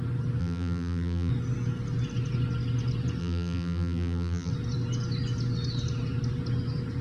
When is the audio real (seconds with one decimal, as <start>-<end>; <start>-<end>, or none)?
0.0-0.4; 1.3-3.2; 4.5-7.0